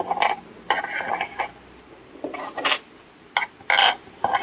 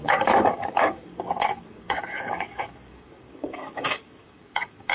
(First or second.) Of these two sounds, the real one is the first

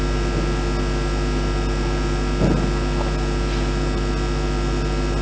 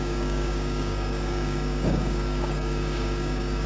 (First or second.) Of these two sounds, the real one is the first